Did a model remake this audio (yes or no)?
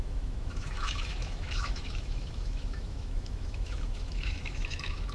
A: yes